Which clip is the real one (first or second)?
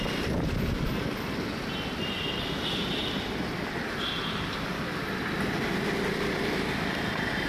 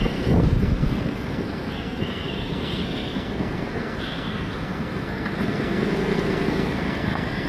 first